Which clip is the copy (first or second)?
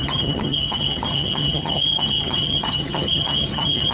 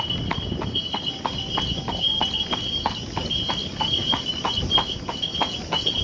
first